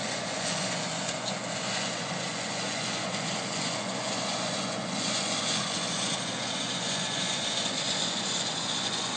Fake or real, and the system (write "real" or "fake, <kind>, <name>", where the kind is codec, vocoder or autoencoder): fake, vocoder, Vocos